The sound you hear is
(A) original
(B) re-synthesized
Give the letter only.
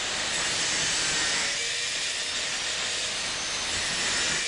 A